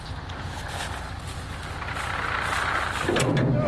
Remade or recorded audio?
recorded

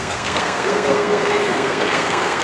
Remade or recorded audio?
remade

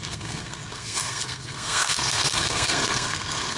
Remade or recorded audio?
remade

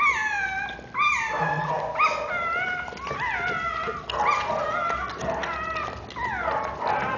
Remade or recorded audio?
recorded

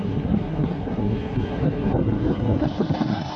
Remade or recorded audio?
remade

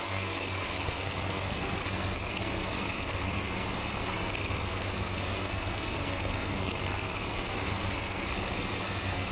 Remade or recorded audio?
remade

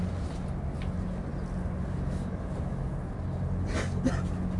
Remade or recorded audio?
recorded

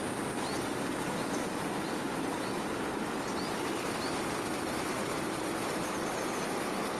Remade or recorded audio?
recorded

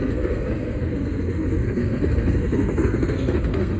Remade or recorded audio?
remade